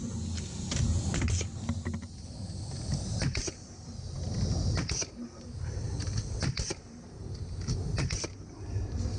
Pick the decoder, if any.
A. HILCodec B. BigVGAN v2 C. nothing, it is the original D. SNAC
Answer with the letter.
C